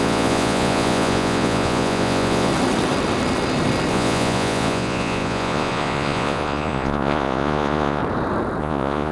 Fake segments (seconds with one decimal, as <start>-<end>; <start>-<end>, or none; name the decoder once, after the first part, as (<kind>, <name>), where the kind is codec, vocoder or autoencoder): 0.0-2.5 (vocoder, Vocos); 3.9-8.0; 8.6-9.1